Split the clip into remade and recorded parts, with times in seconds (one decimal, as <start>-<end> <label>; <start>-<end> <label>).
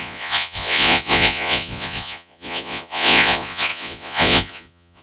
0.0-5.0 remade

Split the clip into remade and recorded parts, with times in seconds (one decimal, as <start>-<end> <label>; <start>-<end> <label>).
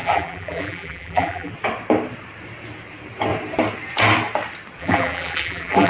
0.0-1.5 remade; 1.5-4.8 recorded; 4.8-5.9 remade